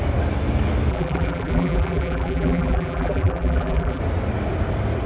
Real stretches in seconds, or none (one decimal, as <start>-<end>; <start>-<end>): 0.0-0.9; 4.0-5.1